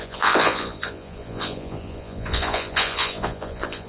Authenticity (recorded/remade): remade